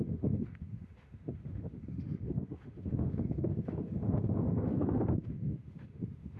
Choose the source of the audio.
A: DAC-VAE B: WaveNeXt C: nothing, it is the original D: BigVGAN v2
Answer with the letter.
A